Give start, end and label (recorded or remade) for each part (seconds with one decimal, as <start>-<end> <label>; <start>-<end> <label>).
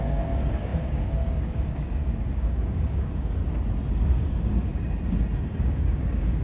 0.0-3.4 remade; 3.4-3.9 recorded; 3.9-4.7 remade; 4.7-5.5 recorded; 5.5-6.4 remade